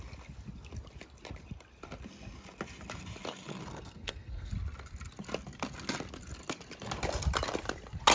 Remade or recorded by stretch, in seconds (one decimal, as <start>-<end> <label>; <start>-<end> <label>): 0.0-3.7 recorded; 3.7-4.5 remade; 4.5-8.1 recorded